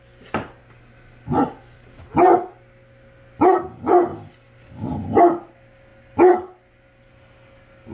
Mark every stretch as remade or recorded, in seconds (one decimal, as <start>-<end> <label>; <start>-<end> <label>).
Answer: 0.0-7.9 recorded